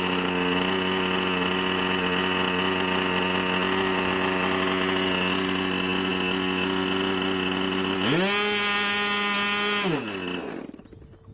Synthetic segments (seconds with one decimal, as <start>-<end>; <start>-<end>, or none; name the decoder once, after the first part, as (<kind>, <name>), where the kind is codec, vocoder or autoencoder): none